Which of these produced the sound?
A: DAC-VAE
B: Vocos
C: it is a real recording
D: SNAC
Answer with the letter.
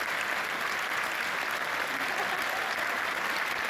C